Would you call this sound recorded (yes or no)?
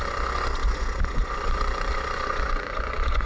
no